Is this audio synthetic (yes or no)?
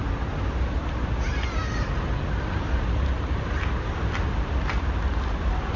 no